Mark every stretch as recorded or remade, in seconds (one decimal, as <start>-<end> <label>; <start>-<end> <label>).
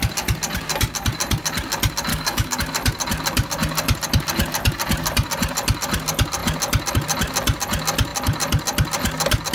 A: 0.0-2.1 recorded; 2.1-2.6 remade; 2.6-9.5 recorded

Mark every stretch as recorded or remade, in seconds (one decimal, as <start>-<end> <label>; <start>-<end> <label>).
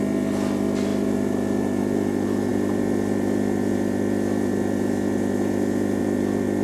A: 0.0-6.6 recorded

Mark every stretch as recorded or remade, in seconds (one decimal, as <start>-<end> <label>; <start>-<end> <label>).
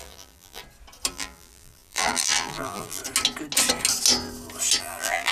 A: 0.0-0.6 remade; 0.6-1.1 recorded; 1.1-3.0 remade; 3.0-4.8 recorded; 4.8-5.3 remade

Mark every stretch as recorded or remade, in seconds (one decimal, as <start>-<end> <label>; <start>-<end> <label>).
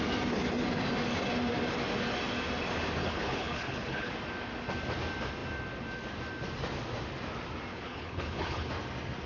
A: 0.0-3.0 recorded; 3.0-4.1 remade; 4.1-7.7 recorded; 7.7-8.7 remade; 8.7-9.3 recorded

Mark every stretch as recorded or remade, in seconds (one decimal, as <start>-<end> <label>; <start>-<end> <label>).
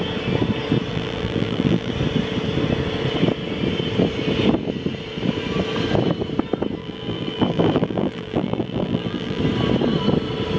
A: 0.0-0.9 recorded; 0.9-1.9 remade; 1.9-6.8 recorded; 6.8-9.4 remade; 9.4-10.6 recorded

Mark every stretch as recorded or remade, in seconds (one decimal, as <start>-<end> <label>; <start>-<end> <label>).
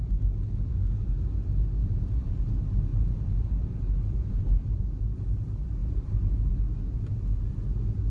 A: 0.0-1.8 recorded; 1.8-2.4 remade; 2.4-2.9 recorded; 2.9-4.8 remade; 4.8-5.8 recorded; 5.8-6.5 remade; 6.5-8.1 recorded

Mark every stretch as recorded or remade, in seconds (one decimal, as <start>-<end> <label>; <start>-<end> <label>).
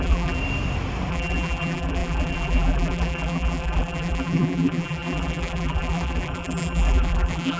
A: 0.0-0.4 remade; 0.4-1.1 recorded; 1.1-7.6 remade